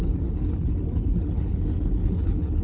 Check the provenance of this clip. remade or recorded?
remade